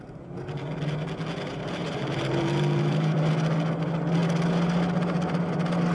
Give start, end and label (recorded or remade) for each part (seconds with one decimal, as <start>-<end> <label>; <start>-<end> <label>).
0.0-1.8 recorded; 1.8-3.3 remade; 3.3-5.9 recorded